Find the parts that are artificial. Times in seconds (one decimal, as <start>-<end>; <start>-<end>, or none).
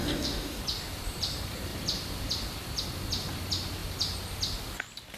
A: 0.0-0.6